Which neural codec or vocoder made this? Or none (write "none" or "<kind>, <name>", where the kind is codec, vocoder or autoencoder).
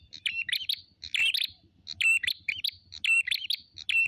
vocoder, BigVGAN v2